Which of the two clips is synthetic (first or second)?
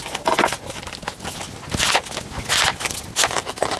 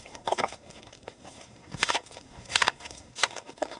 second